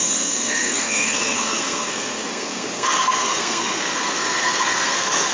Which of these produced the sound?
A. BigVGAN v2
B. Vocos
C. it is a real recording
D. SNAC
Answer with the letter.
D